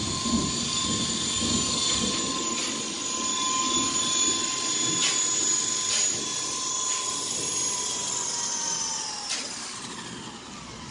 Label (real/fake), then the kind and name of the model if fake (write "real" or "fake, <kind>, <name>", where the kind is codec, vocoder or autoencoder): real